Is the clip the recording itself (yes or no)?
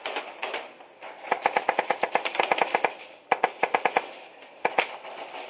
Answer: no